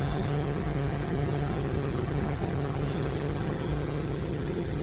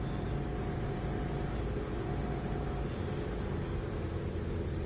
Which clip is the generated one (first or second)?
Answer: first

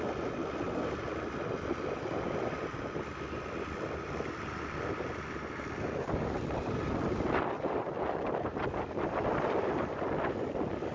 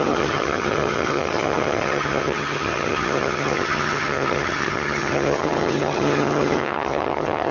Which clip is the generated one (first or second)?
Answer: second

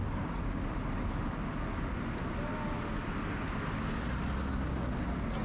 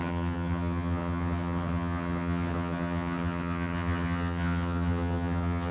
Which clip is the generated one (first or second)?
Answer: second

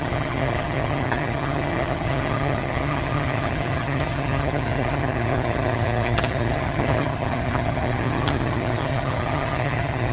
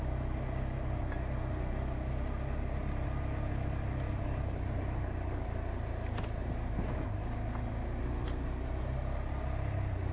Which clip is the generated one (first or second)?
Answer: first